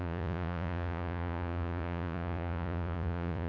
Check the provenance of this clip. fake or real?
fake